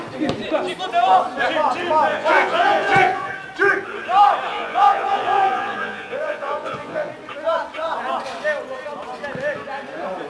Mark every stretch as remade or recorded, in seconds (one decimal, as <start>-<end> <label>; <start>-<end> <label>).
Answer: 0.0-2.1 recorded; 2.1-3.3 remade; 3.3-4.5 recorded; 4.5-7.1 remade; 7.1-10.3 recorded

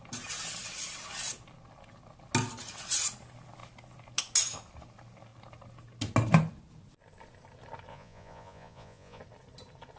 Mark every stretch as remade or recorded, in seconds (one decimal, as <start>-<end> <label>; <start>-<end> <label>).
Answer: 0.0-7.9 recorded; 7.9-9.2 remade; 9.2-10.0 recorded

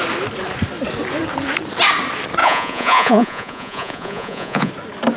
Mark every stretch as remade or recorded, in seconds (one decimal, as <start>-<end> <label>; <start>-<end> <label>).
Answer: 0.0-2.4 recorded; 2.4-4.7 remade; 4.7-5.2 recorded